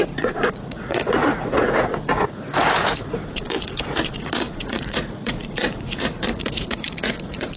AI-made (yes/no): yes